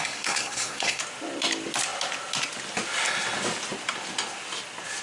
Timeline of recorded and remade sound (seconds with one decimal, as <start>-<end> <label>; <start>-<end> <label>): 0.0-1.0 remade; 1.0-5.0 recorded